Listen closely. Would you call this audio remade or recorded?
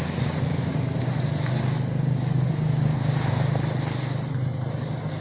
recorded